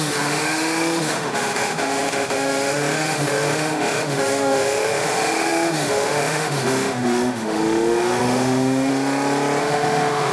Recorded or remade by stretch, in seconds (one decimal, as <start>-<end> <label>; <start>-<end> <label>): 0.0-8.9 remade; 8.9-9.6 recorded; 9.6-10.3 remade